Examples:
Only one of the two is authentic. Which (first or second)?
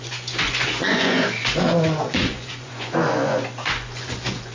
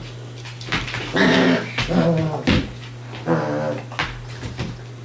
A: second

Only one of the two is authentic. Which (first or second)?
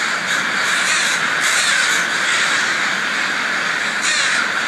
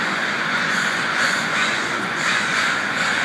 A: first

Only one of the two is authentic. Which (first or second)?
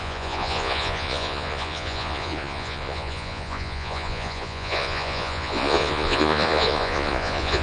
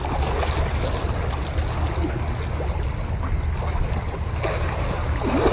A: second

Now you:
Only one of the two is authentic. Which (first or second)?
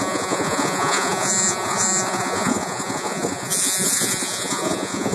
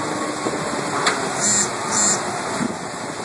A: second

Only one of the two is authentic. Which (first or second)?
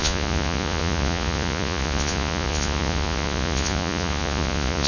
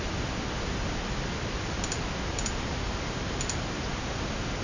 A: second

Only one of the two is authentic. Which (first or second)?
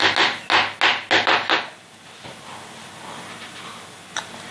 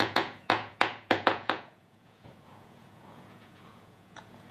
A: first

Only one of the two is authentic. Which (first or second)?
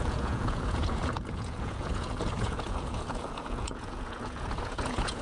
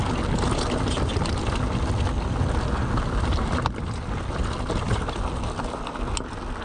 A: second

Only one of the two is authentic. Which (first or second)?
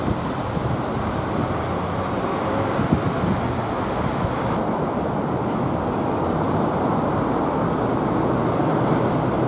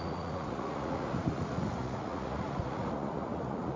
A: first